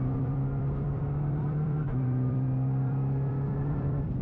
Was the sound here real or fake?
fake